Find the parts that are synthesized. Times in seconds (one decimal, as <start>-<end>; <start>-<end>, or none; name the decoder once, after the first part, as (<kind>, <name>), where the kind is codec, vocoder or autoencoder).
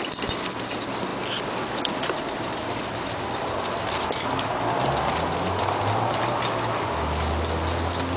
1.1-5.1 (vocoder, BigVGAN v2)